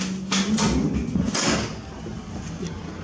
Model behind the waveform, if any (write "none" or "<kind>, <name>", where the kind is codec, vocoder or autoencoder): none